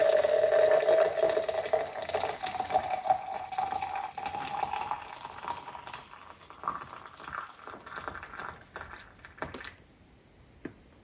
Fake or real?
real